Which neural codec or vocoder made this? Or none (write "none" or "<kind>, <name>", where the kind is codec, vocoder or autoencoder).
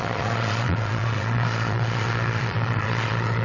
vocoder, Vocos